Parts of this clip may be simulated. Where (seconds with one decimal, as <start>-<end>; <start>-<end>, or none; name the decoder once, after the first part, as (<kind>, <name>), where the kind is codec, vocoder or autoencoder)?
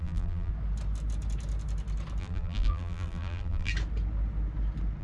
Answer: 0.0-0.5 (vocoder, BigVGAN v2); 2.2-3.7